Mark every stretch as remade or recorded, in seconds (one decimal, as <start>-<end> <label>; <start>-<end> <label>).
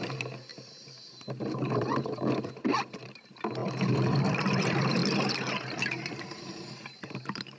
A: 0.0-5.0 remade; 5.0-5.8 recorded; 5.8-7.6 remade